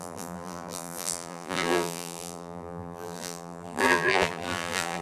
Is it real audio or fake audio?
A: fake